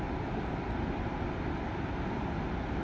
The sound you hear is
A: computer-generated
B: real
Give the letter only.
B